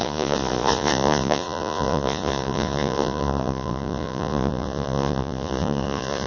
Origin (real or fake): fake